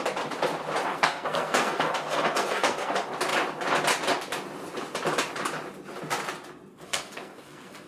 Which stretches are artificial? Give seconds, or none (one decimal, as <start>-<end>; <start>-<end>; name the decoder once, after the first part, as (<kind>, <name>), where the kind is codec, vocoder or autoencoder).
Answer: 0.9-2.9 (codec, SNAC); 6.7-7.9